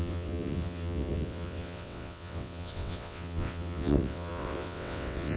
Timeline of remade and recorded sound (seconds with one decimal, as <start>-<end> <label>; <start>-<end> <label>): 0.0-5.4 remade